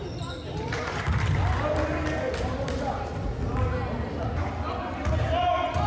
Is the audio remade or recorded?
recorded